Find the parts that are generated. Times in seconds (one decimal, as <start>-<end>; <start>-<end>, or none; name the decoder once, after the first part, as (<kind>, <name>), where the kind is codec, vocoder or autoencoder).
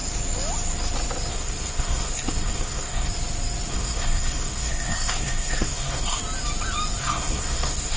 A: 1.3-3.1 (codec, SNAC); 3.7-6.2; 7.0-8.0